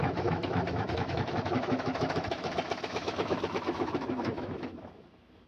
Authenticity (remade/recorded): remade